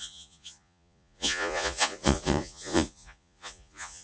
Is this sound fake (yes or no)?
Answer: yes